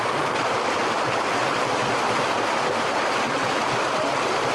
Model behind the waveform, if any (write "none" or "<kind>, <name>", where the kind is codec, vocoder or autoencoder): none